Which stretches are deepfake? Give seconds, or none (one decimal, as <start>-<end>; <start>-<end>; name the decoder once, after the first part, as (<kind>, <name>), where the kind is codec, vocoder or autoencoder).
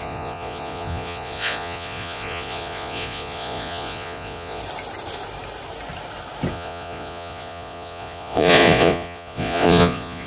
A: 0.0-4.6 (vocoder, Vocos); 6.5-10.3